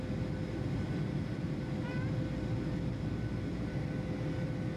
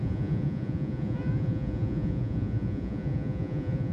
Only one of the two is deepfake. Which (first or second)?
second